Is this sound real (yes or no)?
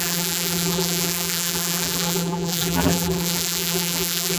no